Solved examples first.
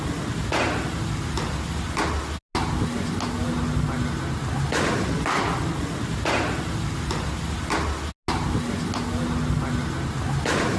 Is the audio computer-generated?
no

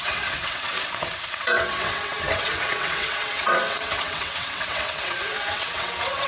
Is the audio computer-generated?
yes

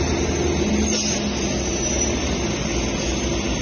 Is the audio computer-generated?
no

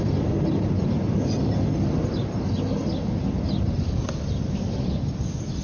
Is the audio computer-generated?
no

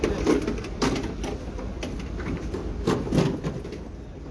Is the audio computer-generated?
no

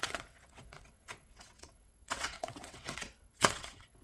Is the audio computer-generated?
yes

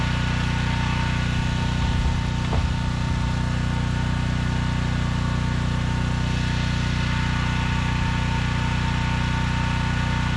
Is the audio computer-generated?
no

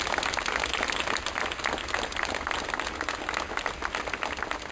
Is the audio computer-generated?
no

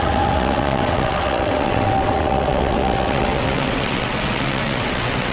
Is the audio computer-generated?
yes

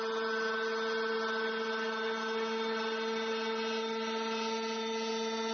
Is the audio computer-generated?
no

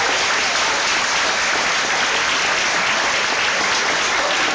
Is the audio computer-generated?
no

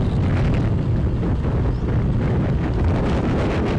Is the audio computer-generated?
no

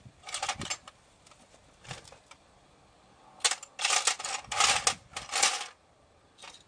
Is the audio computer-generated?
no